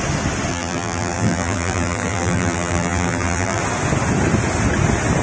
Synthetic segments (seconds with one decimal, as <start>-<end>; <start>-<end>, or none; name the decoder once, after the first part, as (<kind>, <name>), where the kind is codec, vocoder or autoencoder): 0.5-3.6 (vocoder, BigVGAN v2)